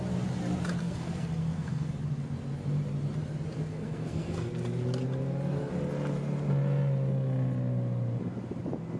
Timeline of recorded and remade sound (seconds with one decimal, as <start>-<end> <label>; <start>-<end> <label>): 0.0-0.8 recorded; 0.8-1.9 remade; 1.9-3.7 recorded; 3.7-4.5 remade; 4.5-9.0 recorded